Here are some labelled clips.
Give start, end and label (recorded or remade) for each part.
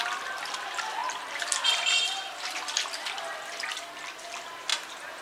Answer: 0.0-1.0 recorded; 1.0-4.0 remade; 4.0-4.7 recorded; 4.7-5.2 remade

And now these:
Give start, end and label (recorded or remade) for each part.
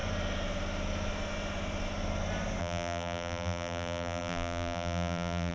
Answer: 0.0-2.6 recorded; 2.6-5.5 remade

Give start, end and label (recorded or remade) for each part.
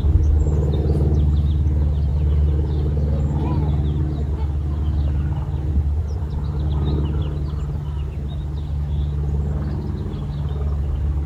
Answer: 0.0-11.3 recorded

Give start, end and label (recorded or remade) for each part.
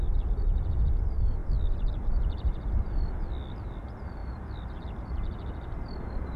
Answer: 0.0-1.4 recorded; 1.4-3.1 remade; 3.1-4.2 recorded; 4.2-4.8 remade; 4.8-6.4 recorded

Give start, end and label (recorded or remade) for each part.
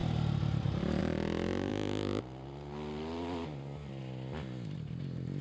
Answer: 0.0-1.0 remade; 1.0-5.4 recorded